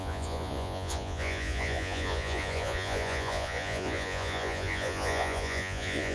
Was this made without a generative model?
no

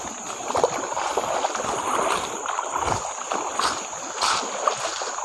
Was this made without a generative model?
yes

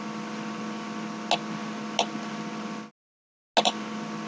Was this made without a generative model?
yes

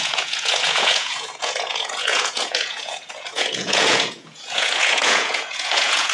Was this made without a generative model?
no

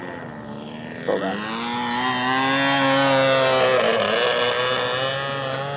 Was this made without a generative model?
yes